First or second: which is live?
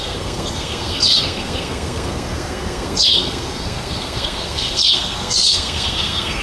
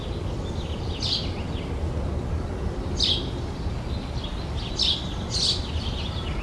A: second